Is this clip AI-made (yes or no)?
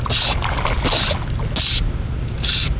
no